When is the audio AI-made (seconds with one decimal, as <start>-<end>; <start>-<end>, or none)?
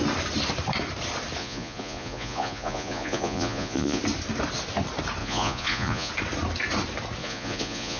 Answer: 1.4-4.0; 5.2-6.1; 7.2-8.0